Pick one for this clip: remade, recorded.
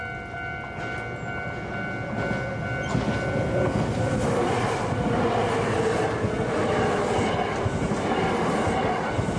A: recorded